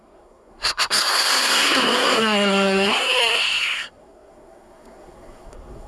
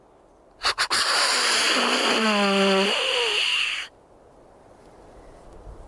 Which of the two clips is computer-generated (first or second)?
first